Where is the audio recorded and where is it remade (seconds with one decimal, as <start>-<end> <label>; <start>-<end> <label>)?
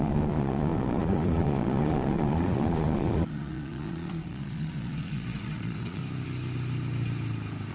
0.0-6.0 remade; 6.0-7.7 recorded